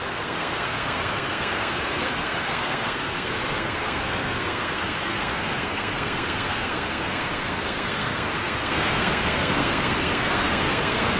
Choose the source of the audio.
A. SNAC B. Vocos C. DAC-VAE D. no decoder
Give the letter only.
A